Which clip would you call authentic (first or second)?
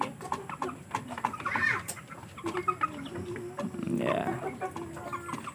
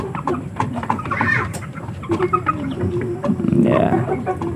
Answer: first